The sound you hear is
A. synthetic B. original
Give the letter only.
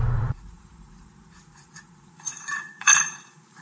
A